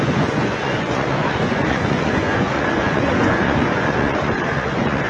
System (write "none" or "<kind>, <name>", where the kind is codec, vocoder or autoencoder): vocoder, Vocos